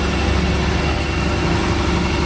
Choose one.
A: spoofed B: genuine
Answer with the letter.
B